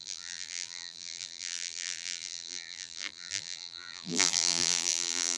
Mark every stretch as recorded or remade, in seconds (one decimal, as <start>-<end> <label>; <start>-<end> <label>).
0.0-5.4 remade